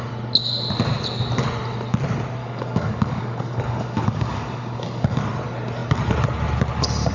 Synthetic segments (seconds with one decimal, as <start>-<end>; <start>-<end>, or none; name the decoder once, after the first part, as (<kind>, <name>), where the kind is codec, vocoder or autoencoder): 2.4-5.2 (codec, DAC)